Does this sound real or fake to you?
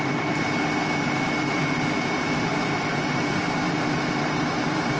fake